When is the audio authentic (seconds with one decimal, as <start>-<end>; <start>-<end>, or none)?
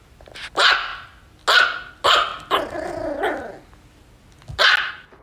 0.0-5.2